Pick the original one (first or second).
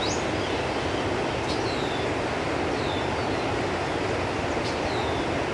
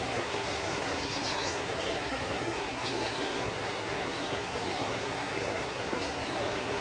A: first